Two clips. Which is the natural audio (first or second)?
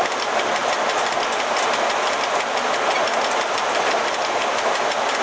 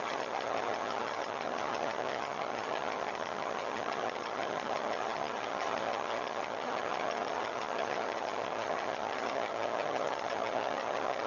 first